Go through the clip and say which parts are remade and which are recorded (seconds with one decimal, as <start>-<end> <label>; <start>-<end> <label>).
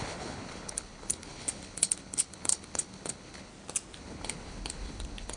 0.0-3.5 remade; 3.5-4.0 recorded; 4.0-5.4 remade